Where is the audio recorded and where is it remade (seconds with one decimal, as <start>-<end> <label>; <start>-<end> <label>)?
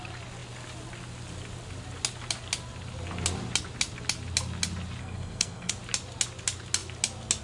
0.0-5.0 recorded; 5.0-5.7 remade; 5.7-7.4 recorded